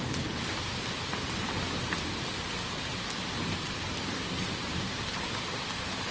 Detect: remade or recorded recorded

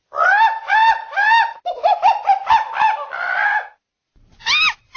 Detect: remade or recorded recorded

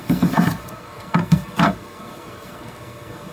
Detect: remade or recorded remade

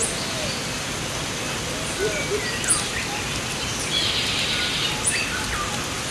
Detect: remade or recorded recorded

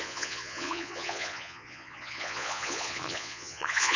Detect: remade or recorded remade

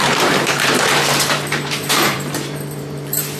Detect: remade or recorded remade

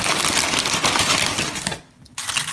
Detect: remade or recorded recorded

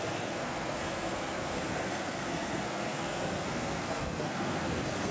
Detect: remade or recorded remade